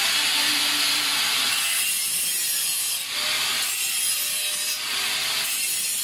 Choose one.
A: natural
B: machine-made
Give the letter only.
A